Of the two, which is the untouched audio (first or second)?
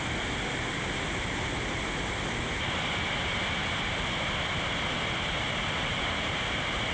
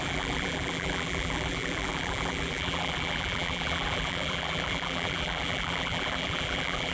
first